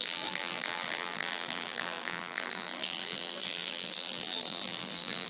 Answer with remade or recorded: remade